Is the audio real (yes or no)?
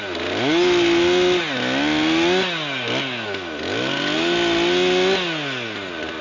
yes